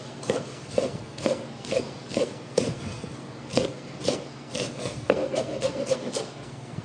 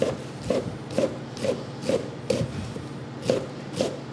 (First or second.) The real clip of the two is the second